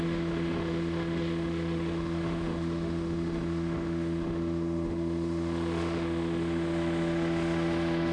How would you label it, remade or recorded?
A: remade